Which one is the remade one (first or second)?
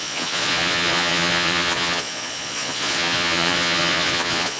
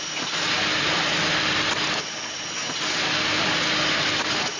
first